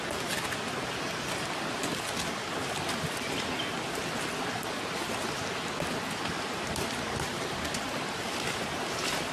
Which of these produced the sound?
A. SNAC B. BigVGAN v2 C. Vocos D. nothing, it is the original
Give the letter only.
D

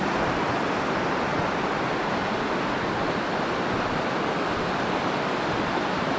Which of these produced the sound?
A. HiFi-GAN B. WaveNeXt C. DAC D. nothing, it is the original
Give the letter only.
D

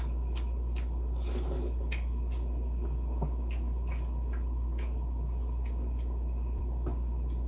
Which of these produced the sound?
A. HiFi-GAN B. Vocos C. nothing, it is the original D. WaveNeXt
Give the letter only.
C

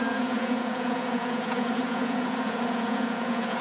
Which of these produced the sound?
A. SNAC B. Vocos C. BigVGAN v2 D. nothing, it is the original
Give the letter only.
B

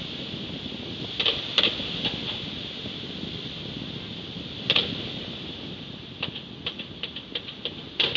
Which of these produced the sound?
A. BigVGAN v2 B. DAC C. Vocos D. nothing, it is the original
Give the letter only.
D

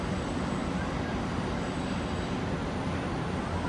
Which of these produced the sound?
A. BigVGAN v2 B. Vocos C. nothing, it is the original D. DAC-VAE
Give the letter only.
C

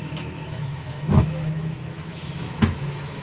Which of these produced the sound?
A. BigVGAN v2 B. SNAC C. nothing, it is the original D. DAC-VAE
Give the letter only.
D